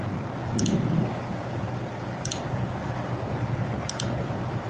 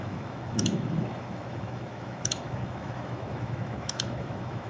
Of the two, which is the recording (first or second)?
first